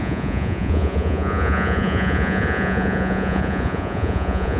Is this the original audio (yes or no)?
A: no